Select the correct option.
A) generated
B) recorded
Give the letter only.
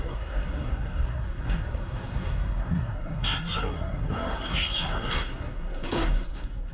A